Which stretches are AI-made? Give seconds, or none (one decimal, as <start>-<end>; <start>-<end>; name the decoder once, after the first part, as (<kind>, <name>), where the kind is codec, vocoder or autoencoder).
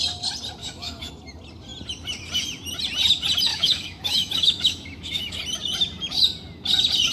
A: 0.6-1.1 (autoencoder, DAC-VAE); 3.5-5.4